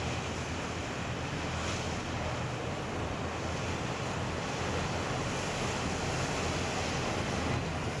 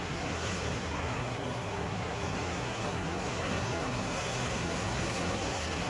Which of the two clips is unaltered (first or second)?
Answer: first